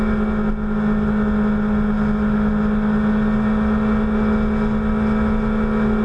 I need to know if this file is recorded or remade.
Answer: recorded